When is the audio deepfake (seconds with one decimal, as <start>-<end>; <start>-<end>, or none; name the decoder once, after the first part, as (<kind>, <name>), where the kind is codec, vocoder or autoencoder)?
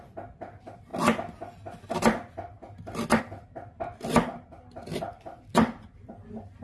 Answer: none